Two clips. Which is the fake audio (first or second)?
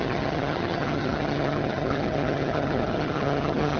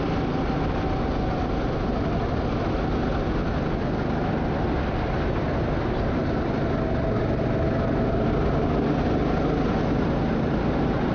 first